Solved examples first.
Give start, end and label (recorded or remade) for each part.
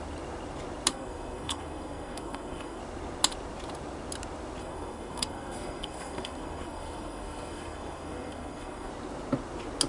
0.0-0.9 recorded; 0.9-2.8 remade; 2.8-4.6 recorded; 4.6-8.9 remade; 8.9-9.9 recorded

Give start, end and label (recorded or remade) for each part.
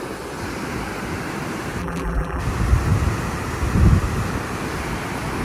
0.0-1.8 recorded; 1.8-2.4 remade; 2.4-5.4 recorded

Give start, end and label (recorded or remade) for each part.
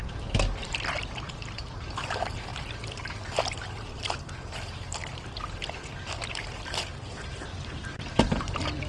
0.0-0.6 recorded; 0.6-1.3 remade; 1.3-7.5 recorded; 7.5-8.4 remade; 8.4-8.9 recorded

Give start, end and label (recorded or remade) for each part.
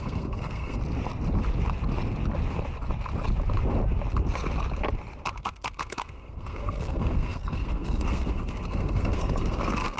0.0-0.8 remade; 0.8-5.4 recorded; 5.4-10.0 remade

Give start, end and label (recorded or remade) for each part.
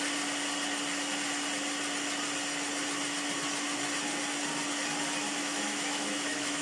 0.0-5.2 recorded; 5.2-6.6 remade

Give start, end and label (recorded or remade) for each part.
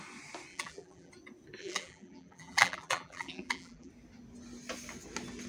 0.0-0.5 recorded; 0.5-1.1 remade; 1.1-1.6 recorded; 1.6-3.9 remade; 3.9-5.5 recorded